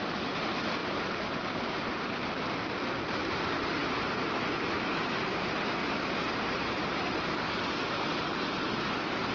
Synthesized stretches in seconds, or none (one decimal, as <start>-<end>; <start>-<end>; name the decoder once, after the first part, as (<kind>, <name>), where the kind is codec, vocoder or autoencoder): 0.8-2.2 (vocoder, BigVGAN v2); 3.8-5.2; 5.8-7.3